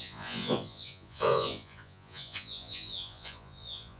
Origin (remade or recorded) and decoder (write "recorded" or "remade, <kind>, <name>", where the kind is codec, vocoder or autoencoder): remade, vocoder, Vocos